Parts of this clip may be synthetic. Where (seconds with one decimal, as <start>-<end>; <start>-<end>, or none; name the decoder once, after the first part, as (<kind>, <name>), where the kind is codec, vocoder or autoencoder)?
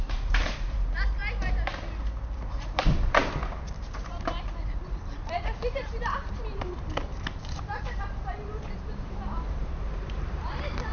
0.0-1.2 (vocoder, BigVGAN v2); 2.5-10.9